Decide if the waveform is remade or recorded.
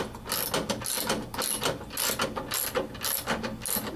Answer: recorded